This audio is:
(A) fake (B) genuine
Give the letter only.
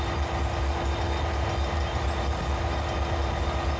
B